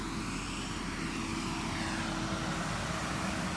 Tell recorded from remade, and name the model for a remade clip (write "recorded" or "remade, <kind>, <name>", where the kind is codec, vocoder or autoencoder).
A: recorded